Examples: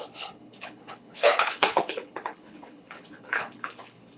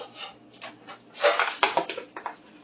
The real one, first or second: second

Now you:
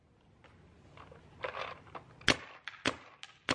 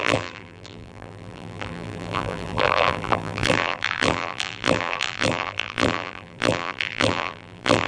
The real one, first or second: first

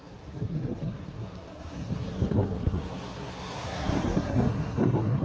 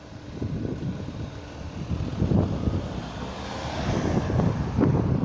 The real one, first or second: second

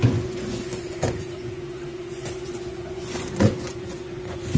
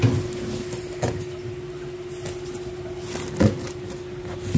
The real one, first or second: second